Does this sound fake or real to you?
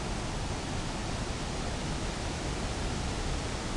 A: real